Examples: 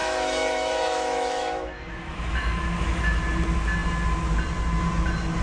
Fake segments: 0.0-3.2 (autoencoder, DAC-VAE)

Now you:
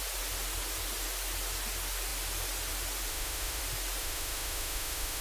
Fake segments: 3.1-3.6 (autoencoder, DAC-VAE); 4.0-5.2

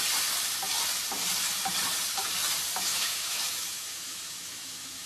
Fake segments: 2.9-5.1 (autoencoder, DAC-VAE)

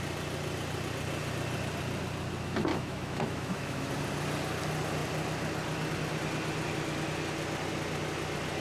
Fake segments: 2.7-3.9 (autoencoder, DAC-VAE)

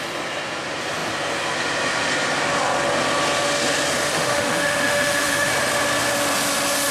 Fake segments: 4.0-5.5 (autoencoder, DAC-VAE)

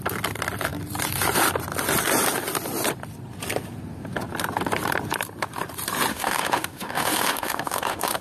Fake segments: 6.1-8.2 (autoencoder, DAC-VAE)

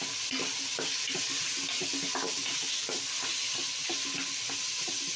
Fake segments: none

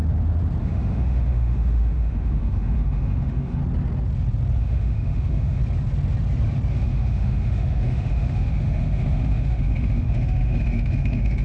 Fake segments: 0.6-3.6 (autoencoder, DAC-VAE); 4.6-5.6; 6.7-11.4